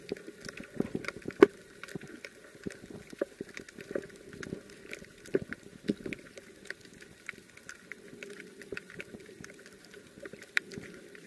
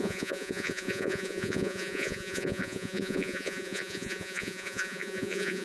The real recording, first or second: first